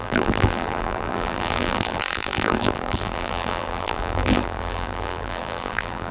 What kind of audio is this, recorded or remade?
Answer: remade